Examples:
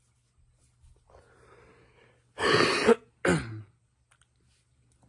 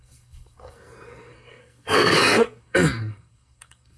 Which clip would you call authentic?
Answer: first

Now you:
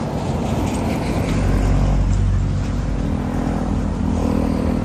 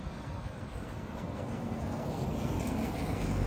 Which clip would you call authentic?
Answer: first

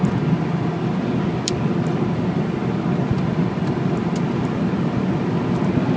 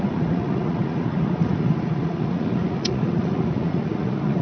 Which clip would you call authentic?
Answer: first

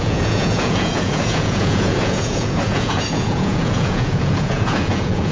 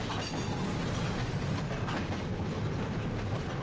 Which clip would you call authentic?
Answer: second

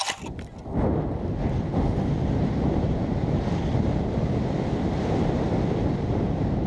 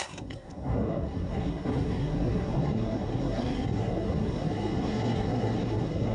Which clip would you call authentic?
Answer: first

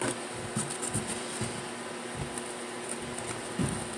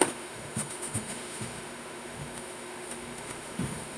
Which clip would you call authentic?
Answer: first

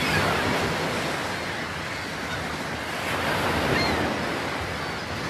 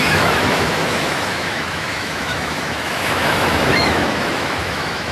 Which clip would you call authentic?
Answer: first